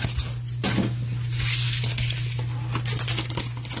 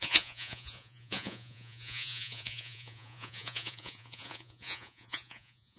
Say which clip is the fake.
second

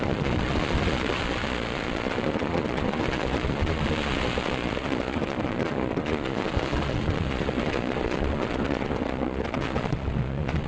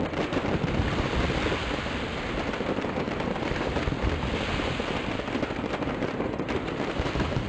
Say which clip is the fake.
first